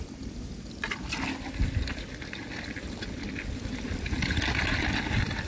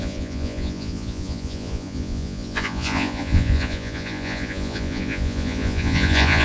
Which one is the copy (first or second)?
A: second